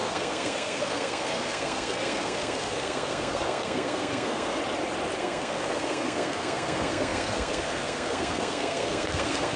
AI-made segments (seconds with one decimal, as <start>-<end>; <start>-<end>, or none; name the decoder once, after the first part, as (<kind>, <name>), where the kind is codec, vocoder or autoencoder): 0.0-4.6 (codec, SNAC); 5.2-9.6